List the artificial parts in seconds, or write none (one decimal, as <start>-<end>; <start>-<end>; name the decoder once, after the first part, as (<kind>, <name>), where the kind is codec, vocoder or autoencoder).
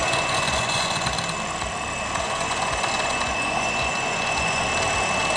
0.0-1.1 (vocoder, Vocos); 2.2-4.7